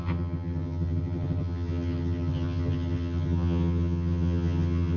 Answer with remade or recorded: remade